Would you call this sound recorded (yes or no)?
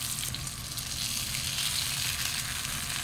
yes